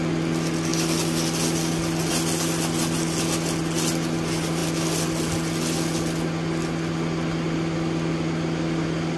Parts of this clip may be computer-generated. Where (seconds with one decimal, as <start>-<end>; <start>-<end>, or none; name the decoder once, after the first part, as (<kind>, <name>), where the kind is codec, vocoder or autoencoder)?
none